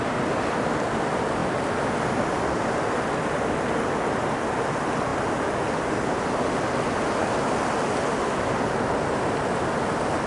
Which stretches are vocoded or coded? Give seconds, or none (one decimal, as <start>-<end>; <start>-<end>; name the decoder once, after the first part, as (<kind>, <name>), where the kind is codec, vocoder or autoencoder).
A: none